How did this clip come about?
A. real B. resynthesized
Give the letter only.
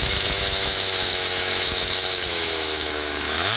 B